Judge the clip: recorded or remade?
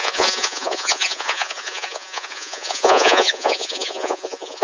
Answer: remade